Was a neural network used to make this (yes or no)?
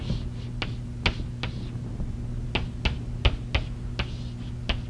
no